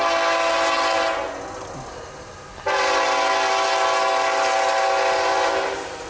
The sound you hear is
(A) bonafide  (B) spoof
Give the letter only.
A